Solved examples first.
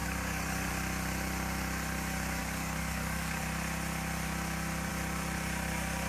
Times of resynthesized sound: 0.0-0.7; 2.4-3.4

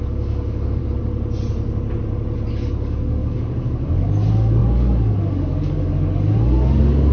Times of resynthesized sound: 0.0-0.8; 2.5-7.1

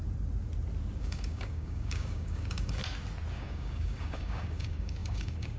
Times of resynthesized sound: 1.0-2.8; 3.3-5.6

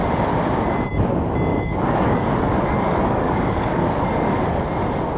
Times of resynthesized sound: 1.5-4.6

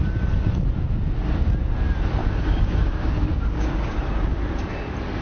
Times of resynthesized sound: 2.2-4.0

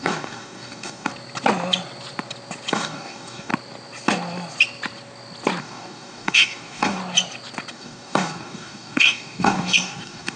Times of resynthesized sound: 0.0-1.1; 2.7-3.5; 5.6-7.0; 7.7-10.4

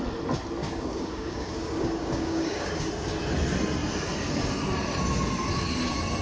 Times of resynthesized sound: 0.6-2.9